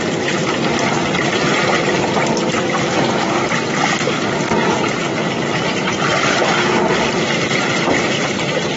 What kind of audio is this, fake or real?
real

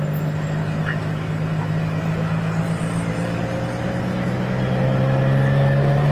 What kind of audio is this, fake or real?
real